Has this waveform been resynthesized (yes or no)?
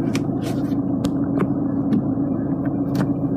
no